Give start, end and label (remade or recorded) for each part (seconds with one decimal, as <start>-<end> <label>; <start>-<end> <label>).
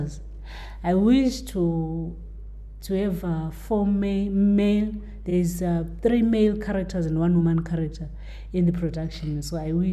0.0-0.6 recorded; 0.6-1.4 remade; 1.4-9.9 recorded